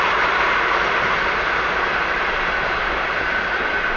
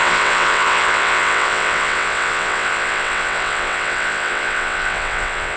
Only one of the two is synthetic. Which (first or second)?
second